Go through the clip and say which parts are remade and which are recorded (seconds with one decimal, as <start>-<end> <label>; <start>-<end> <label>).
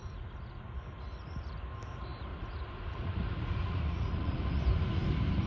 0.0-0.8 remade; 0.8-2.3 recorded; 2.3-4.6 remade; 4.6-5.5 recorded